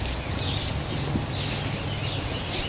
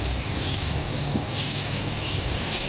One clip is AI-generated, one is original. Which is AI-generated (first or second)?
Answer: second